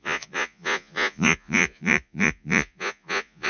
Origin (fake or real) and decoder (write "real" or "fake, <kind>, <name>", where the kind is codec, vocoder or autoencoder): fake, vocoder, Vocos